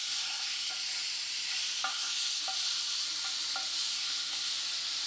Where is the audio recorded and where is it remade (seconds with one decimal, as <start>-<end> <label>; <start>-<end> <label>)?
0.0-0.7 remade; 0.7-1.9 recorded; 1.9-2.4 remade; 2.4-3.9 recorded; 3.9-4.5 remade; 4.5-5.1 recorded